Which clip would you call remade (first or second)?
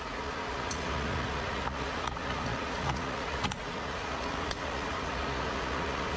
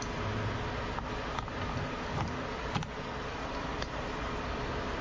first